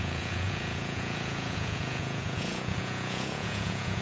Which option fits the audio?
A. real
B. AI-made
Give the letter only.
B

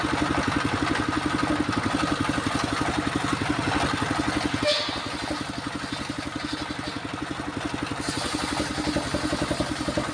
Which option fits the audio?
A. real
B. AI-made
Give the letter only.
A